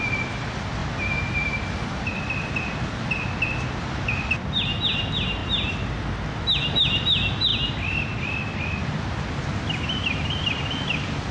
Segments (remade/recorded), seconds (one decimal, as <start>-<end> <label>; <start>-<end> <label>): 0.0-11.3 recorded